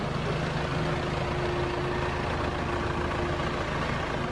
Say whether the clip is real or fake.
real